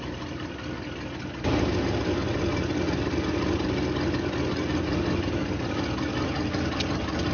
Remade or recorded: recorded